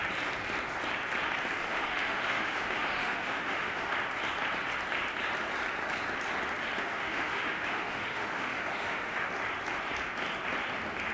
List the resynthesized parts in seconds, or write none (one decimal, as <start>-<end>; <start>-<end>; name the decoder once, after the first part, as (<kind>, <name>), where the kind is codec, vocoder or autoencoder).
1.6-3.9 (autoencoder, DAC-VAE); 6.8-9.3